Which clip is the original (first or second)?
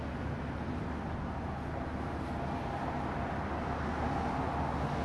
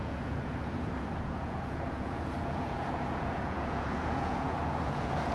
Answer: first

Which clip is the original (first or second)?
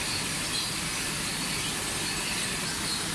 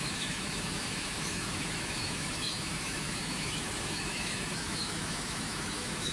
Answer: first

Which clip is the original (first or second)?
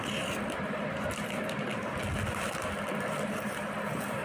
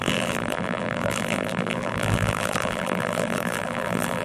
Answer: first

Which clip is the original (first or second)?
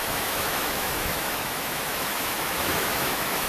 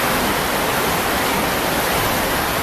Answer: second